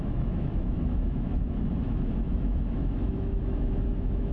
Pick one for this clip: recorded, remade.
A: remade